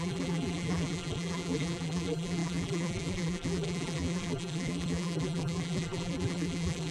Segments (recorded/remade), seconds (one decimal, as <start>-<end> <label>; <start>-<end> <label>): 0.0-6.9 remade